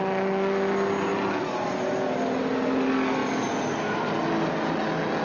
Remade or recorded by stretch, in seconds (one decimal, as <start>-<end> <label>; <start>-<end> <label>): 0.0-5.2 recorded